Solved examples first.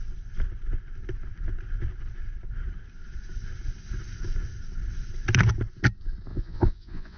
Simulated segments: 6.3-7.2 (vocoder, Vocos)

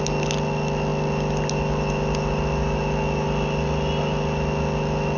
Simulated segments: none